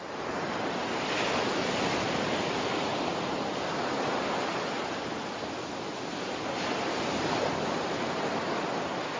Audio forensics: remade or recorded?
recorded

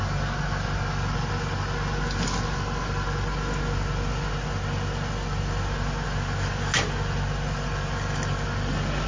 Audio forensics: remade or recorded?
recorded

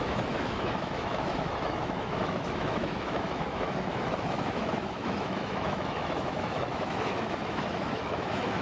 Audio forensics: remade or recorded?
remade